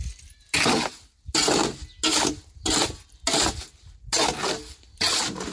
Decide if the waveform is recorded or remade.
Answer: recorded